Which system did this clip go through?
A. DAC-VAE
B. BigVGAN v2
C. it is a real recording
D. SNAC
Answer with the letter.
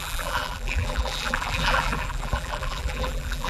B